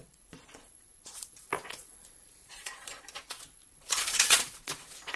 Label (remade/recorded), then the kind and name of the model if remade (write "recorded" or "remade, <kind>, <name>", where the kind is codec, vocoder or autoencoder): remade, vocoder, Vocos